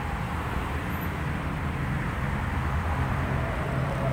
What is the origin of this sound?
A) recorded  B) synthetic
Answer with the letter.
B